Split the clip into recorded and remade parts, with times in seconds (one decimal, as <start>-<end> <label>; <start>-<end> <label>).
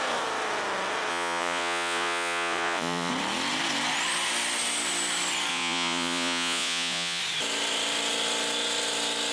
0.0-1.1 recorded; 1.1-3.1 remade; 3.1-5.5 recorded; 5.5-7.2 remade; 7.2-9.3 recorded